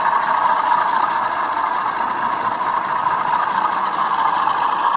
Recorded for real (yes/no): yes